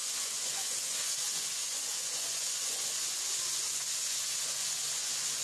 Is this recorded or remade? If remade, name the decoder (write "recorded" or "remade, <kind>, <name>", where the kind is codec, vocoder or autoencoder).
remade, vocoder, Vocos